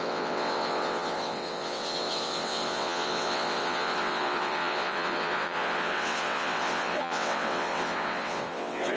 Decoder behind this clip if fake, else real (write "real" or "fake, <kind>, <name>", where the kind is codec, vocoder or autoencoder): fake, vocoder, WaveNeXt